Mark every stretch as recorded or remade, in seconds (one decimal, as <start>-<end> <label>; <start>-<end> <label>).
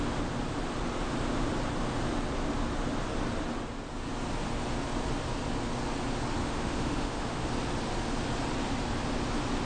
0.0-6.4 recorded; 6.4-7.5 remade; 7.5-9.7 recorded